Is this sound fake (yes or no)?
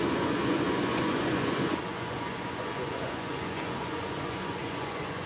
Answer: yes